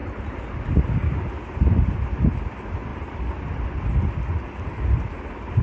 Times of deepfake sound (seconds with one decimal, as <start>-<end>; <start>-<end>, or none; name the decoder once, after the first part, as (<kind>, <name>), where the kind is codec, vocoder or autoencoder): 2.9-4.0 (vocoder, BigVGAN v2)